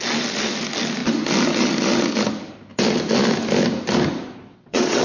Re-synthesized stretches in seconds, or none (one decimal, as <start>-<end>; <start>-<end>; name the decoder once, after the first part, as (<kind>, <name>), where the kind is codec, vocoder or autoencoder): 4.5-5.0 (vocoder, WaveNeXt)